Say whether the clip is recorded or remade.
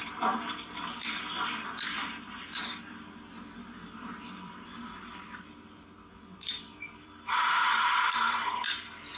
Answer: remade